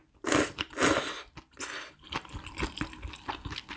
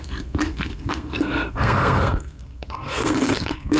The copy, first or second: second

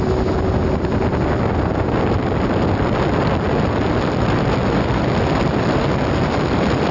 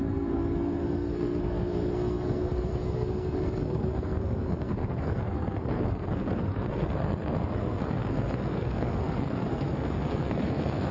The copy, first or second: second